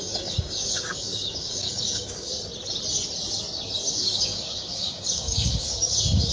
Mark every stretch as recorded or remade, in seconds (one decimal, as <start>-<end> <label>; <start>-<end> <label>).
0.0-2.3 remade; 2.3-3.9 recorded; 3.9-6.3 remade